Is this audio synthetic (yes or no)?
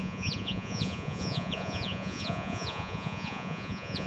yes